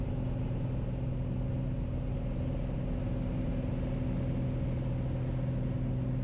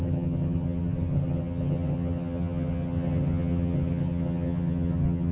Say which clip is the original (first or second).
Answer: first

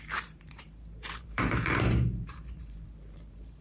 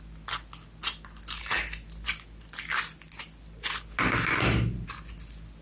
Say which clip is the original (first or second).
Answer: second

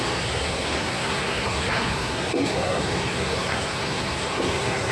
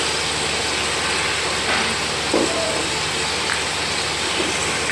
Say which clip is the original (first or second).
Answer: second